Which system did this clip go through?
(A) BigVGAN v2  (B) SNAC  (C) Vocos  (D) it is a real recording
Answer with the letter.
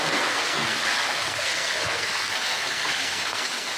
B